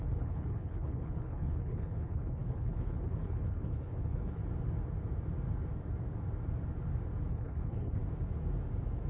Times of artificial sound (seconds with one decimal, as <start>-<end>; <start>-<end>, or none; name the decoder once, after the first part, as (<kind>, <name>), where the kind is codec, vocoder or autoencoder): 0.0-4.4 (codec, HILCodec); 7.3-8.0